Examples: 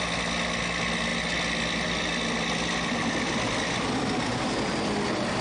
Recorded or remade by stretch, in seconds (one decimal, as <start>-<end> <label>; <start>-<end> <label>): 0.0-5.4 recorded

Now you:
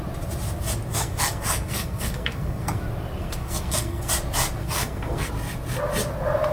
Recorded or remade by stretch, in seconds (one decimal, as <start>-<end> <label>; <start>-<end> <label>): 0.0-0.9 recorded; 0.9-2.8 remade; 2.8-3.2 recorded; 3.2-4.1 remade; 4.1-4.6 recorded; 4.6-5.3 remade; 5.3-6.5 recorded

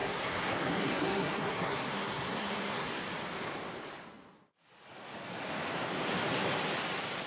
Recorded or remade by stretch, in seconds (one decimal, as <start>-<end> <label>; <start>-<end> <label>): 0.0-3.0 remade; 3.0-7.3 recorded

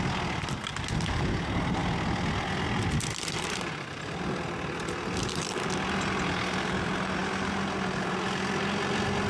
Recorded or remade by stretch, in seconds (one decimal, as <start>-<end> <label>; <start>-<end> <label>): 0.0-9.3 recorded

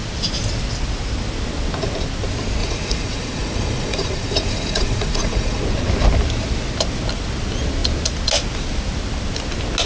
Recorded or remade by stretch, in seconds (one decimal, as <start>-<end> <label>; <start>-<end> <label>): 0.0-2.6 recorded; 2.6-5.6 remade; 5.6-9.9 recorded